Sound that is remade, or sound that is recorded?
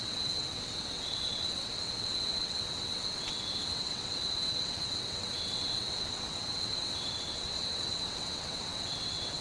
remade